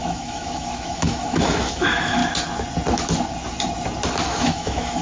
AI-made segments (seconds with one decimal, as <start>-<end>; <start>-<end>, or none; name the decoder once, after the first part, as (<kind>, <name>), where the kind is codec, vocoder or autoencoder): 0.0-2.2 (autoencoder, DAC-VAE); 4.2-5.0